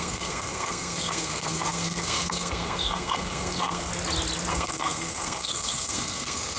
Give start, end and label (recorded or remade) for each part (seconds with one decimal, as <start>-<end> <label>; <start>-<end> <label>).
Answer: 0.0-3.9 remade; 3.9-4.5 recorded; 4.5-6.6 remade